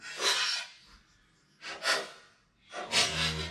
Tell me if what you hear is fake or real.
real